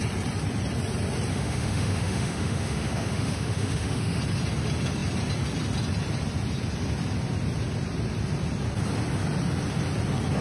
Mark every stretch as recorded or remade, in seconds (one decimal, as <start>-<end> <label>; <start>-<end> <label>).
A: 0.0-1.3 recorded; 1.3-4.2 remade; 4.2-10.4 recorded

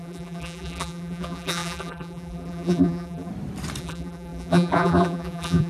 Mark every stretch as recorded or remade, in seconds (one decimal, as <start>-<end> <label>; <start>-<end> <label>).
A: 0.0-3.3 remade; 3.3-3.8 recorded; 3.8-5.7 remade

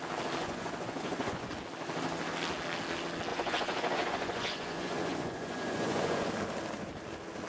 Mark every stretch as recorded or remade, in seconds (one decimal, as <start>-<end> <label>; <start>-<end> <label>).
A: 0.0-0.4 recorded; 0.4-1.5 remade; 1.5-3.3 recorded; 3.3-6.3 remade; 6.3-7.5 recorded

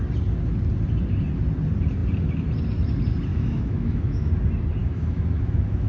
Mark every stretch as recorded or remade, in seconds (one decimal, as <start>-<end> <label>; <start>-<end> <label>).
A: 0.0-3.3 recorded; 3.3-4.3 remade; 4.3-4.8 recorded; 4.8-5.9 remade